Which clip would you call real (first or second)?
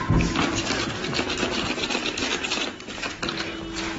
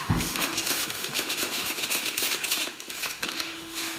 first